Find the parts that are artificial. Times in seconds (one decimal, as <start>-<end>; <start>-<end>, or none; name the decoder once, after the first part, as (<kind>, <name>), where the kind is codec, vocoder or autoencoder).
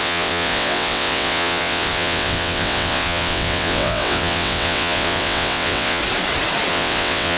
0.0-6.0 (vocoder, WaveNeXt); 6.7-7.4